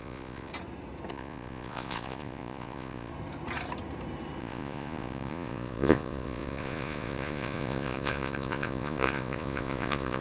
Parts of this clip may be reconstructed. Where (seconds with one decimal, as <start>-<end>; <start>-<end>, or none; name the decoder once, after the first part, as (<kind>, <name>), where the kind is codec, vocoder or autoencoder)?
0.0-0.5 (vocoder, Vocos); 1.1-3.1; 4.4-10.2